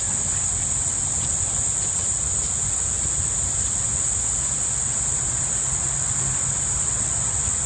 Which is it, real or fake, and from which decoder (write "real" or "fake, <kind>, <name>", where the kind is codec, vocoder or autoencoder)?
real